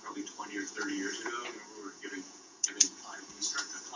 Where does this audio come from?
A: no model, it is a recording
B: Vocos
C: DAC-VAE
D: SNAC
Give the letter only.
B